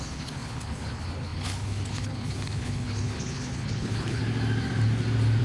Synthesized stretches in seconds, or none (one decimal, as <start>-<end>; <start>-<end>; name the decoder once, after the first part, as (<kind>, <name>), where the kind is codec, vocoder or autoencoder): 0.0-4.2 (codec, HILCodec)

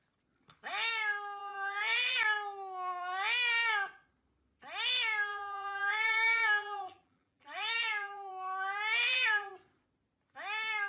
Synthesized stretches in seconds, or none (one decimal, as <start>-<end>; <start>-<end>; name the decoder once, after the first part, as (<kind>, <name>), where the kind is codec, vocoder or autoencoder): 1.4-2.2 (vocoder, BigVGAN v2); 5.3-8.3; 9.0-9.5

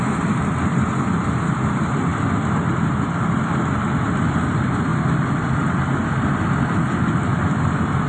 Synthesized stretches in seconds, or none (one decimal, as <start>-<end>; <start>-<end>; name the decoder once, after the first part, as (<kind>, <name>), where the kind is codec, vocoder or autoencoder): none